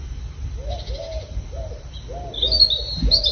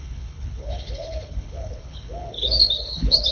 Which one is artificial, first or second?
second